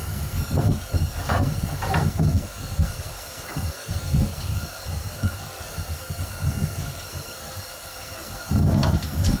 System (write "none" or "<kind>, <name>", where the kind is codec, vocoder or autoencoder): codec, SNAC